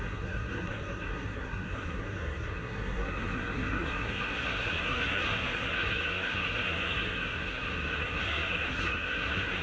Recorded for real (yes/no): no